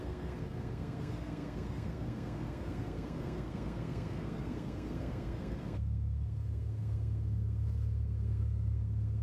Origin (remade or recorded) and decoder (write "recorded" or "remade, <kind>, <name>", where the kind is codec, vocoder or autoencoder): remade, codec, SNAC